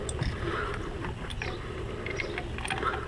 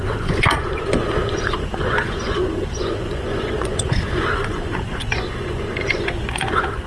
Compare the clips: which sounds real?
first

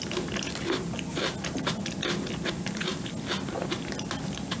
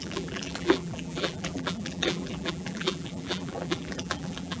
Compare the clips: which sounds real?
first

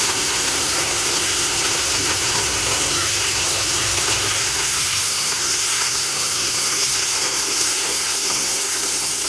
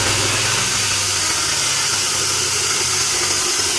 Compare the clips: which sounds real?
second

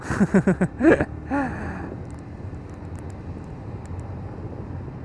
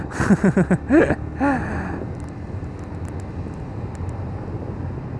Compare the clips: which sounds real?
second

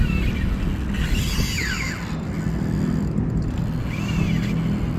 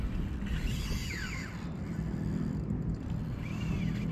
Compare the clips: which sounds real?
first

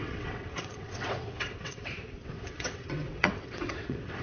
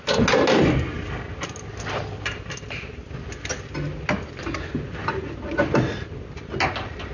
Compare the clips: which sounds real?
second